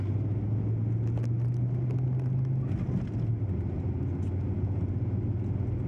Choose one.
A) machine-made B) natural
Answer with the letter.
B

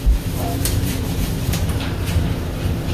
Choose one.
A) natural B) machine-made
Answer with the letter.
B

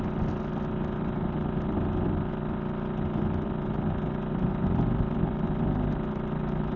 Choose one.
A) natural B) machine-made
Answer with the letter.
A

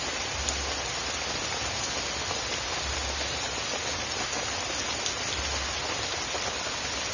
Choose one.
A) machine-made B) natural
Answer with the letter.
B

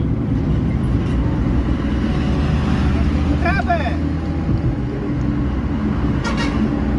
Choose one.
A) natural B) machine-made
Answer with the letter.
A